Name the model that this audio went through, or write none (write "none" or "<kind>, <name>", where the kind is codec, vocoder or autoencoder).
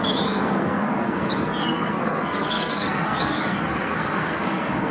codec, SNAC